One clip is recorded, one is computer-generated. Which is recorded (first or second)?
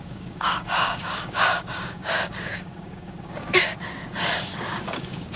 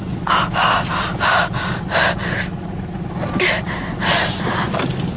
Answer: second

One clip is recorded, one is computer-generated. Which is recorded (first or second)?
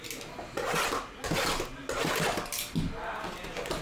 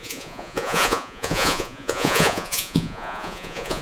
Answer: first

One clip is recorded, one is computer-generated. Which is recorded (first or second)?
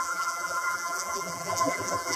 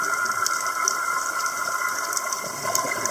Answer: second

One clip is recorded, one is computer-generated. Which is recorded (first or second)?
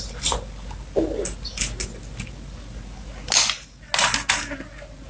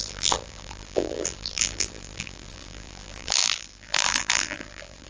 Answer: first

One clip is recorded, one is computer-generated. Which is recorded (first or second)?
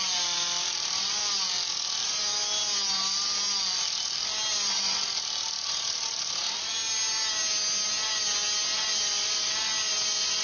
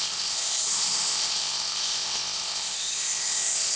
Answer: first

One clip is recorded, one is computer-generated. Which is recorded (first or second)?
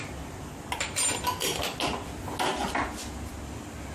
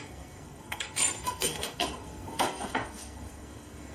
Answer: first